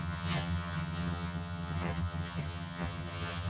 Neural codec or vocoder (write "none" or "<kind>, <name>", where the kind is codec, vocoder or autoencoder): vocoder, HiFi-GAN